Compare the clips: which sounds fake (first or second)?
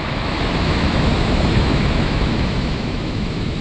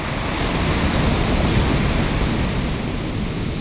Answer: first